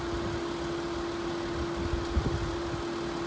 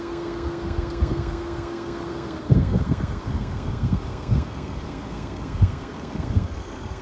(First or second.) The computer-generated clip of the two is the second